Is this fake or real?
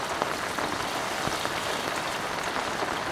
fake